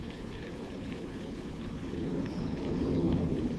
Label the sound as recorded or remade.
remade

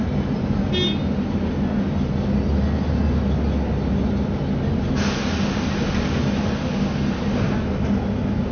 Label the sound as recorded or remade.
recorded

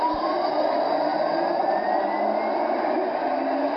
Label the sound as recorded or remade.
recorded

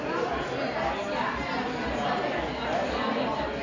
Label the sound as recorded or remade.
recorded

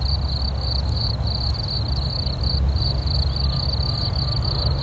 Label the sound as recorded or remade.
recorded